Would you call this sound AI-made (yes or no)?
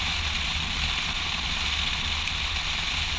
no